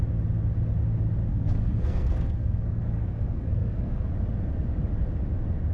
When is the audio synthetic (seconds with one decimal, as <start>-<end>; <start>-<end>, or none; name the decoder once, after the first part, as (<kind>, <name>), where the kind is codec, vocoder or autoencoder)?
1.3-4.1 (codec, SNAC)